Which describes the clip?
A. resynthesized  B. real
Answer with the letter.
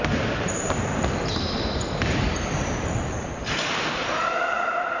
A